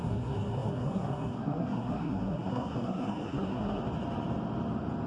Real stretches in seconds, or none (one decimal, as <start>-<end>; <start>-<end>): 3.8-5.1